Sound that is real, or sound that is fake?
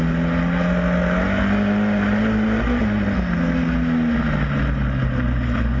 real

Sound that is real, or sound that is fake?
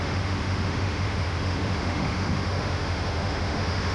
fake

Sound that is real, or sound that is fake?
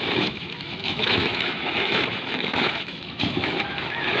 fake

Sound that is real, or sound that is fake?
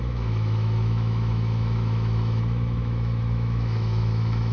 fake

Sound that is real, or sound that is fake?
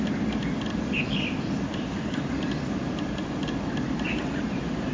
real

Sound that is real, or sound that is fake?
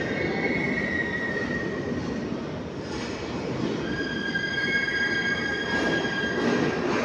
real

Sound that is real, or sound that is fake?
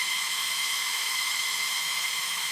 fake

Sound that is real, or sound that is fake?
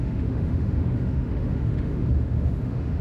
fake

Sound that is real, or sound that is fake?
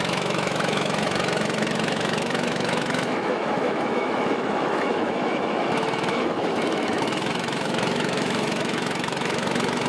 fake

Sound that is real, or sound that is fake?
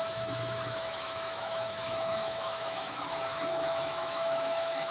fake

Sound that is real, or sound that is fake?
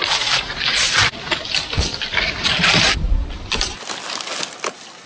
real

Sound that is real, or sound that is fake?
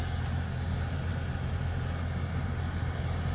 real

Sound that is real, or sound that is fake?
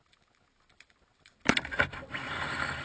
real